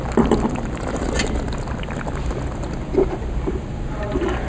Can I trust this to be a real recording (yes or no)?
yes